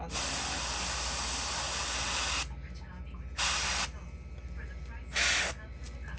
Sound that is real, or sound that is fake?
real